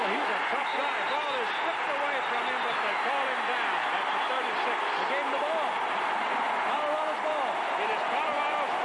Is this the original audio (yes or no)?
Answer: yes